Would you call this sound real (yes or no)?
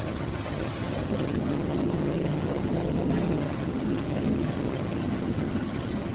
no